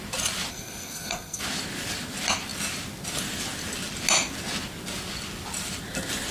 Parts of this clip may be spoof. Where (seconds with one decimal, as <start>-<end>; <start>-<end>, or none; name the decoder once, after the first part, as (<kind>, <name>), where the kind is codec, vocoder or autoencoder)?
0.5-1.4 (codec, SNAC)